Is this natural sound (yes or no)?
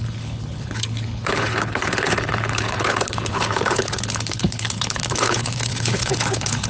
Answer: no